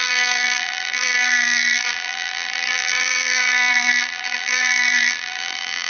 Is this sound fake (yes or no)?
yes